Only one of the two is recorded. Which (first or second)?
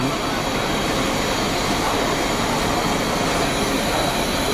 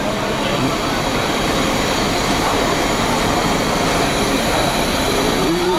first